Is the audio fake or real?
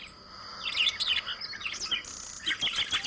real